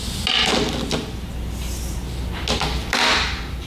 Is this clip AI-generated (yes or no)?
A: no